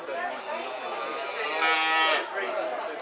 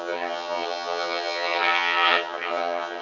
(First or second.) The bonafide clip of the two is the first